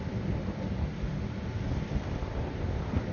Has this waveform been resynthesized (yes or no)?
no